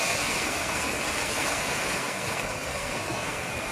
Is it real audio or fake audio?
fake